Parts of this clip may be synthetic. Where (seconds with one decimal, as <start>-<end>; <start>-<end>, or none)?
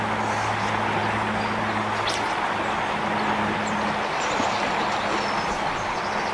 none